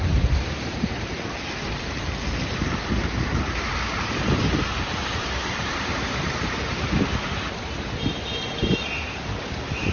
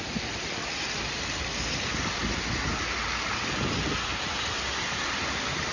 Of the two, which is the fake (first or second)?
first